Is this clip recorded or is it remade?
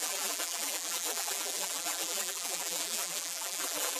remade